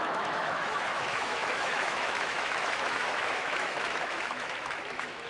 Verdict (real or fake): fake